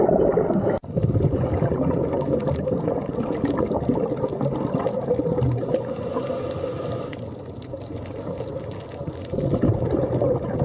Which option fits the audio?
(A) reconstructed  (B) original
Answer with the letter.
B